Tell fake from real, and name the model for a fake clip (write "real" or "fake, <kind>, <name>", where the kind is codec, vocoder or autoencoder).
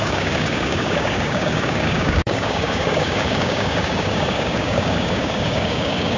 fake, codec, DAC